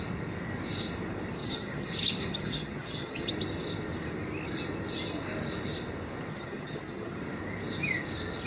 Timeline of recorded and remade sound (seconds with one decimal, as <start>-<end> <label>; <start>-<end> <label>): 0.0-1.4 recorded; 1.4-1.9 remade; 1.9-2.3 recorded; 2.3-3.3 remade; 3.3-6.3 recorded; 6.3-7.2 remade; 7.2-8.5 recorded